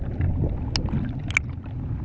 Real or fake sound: real